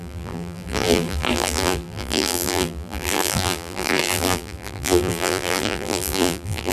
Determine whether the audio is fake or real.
fake